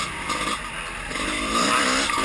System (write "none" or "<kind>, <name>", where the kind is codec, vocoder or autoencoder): none